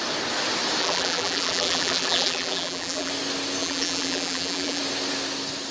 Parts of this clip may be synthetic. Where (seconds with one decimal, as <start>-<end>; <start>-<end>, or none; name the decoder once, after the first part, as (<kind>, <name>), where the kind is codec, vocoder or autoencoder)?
0.8-3.1 (vocoder, BigVGAN v2); 3.6-4.8